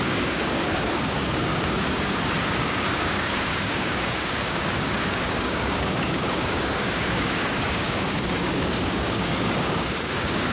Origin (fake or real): fake